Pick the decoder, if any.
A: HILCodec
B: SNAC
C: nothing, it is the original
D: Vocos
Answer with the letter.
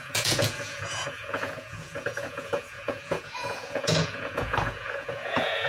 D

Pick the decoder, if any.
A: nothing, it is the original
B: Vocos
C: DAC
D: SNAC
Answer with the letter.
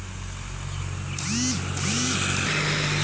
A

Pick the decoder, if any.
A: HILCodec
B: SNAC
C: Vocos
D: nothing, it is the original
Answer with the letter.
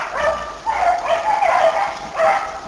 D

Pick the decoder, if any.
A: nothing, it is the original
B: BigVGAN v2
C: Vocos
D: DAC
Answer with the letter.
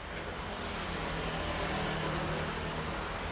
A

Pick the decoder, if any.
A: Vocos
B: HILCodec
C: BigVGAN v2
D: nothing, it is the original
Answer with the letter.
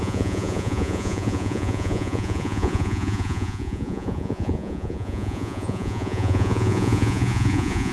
A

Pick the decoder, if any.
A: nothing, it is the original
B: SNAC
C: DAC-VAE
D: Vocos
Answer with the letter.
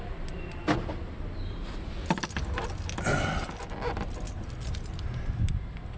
A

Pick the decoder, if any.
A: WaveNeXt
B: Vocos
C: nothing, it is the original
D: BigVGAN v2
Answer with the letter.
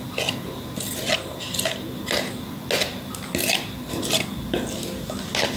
C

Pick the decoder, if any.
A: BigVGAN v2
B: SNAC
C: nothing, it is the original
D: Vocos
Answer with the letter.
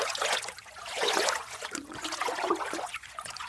D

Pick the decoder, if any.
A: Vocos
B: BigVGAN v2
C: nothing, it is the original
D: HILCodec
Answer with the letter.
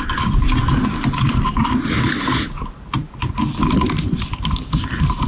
C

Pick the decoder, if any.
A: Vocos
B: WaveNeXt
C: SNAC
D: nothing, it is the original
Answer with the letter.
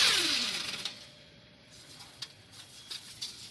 A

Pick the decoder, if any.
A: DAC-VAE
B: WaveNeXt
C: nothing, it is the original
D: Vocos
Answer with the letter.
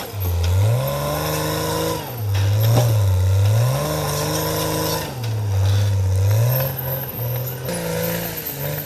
C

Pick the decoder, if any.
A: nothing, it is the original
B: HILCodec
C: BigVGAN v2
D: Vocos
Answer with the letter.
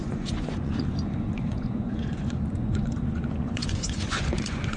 D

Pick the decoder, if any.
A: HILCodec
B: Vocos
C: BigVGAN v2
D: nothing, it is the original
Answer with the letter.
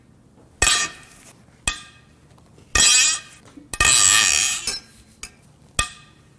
D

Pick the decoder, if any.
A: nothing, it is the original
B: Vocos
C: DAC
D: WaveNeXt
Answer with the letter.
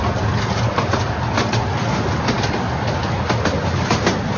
A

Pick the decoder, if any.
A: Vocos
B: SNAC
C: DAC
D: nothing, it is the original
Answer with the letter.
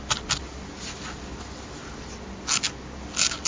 D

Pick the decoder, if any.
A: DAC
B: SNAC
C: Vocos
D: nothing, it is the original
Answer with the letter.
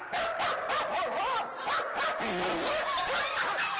D